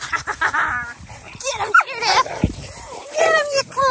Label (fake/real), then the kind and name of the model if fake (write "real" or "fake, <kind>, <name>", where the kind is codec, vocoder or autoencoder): fake, vocoder, BigVGAN v2